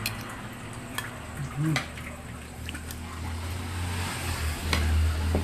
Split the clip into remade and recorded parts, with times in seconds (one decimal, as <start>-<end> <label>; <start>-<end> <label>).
0.0-5.4 recorded

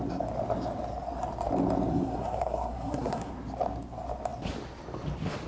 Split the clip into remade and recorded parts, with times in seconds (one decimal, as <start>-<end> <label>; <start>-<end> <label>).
0.0-1.9 recorded; 1.9-3.3 remade; 3.3-5.5 recorded

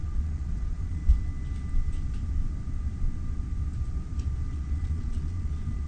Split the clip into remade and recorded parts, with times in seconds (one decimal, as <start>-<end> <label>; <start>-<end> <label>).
0.0-1.0 remade; 1.0-4.5 recorded; 4.5-5.9 remade

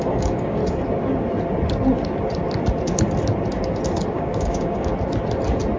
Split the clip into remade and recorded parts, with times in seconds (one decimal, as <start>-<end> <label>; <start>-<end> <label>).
0.0-0.6 remade; 0.6-4.1 recorded; 4.1-4.9 remade; 4.9-5.8 recorded

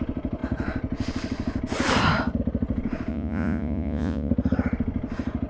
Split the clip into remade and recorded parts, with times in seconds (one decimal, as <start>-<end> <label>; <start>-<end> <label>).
0.0-3.1 recorded; 3.1-4.3 remade; 4.3-5.5 recorded

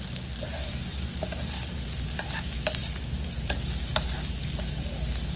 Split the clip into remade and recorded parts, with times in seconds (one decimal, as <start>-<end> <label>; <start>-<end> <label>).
0.0-5.4 recorded

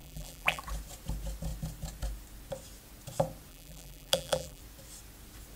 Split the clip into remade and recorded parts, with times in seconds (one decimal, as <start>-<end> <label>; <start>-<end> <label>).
0.0-0.6 remade; 0.6-3.5 recorded; 3.5-4.6 remade; 4.6-5.6 recorded

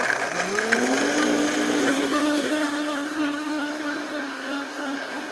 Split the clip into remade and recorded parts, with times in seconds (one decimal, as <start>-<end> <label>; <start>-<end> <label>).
0.0-1.8 recorded; 1.8-5.3 remade